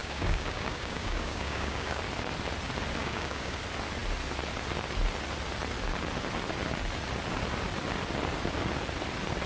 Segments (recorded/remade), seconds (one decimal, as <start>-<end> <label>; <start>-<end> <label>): 0.0-2.0 remade; 2.0-3.0 recorded; 3.0-3.6 remade; 3.6-9.5 recorded

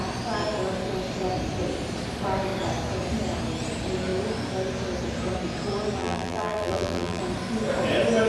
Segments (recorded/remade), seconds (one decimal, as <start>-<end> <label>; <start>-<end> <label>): 0.0-6.0 recorded; 6.0-7.2 remade; 7.2-8.3 recorded

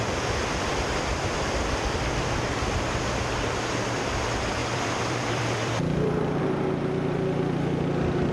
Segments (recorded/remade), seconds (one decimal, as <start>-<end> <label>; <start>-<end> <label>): 0.0-1.1 recorded; 1.1-3.2 remade; 3.2-4.6 recorded; 4.6-6.4 remade; 6.4-8.3 recorded

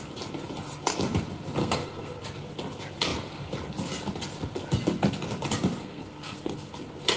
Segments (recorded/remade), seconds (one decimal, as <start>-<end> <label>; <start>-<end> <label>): 0.0-1.6 recorded; 1.6-2.2 remade; 2.2-5.8 recorded; 5.8-6.7 remade; 6.7-7.2 recorded

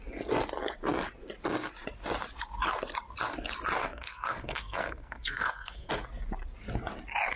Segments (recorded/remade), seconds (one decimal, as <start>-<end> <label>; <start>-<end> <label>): 0.0-3.8 recorded; 3.8-5.9 remade; 5.9-7.4 recorded

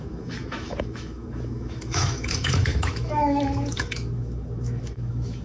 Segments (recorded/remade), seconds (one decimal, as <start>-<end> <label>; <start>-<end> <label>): 0.0-5.4 remade

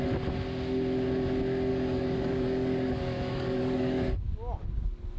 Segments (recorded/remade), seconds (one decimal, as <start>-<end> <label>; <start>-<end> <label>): 0.0-1.7 recorded; 1.7-4.1 remade; 4.1-5.2 recorded